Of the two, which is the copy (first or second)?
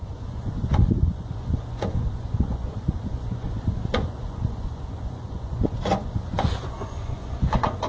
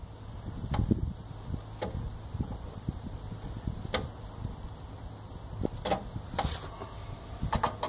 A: first